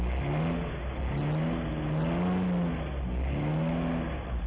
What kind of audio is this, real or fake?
real